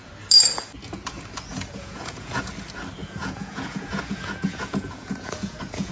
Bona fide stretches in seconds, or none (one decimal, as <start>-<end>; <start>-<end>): 0.0-1.5; 2.5-3.0